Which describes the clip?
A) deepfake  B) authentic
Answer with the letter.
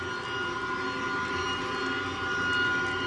B